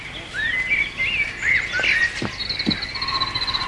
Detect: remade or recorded recorded